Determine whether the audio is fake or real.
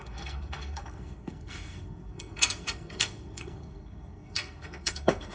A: fake